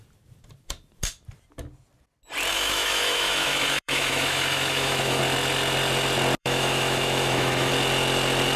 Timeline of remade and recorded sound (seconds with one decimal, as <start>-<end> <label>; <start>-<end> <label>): 0.0-2.5 recorded; 2.5-5.2 remade; 5.2-6.4 recorded; 6.4-7.7 remade; 7.7-8.6 recorded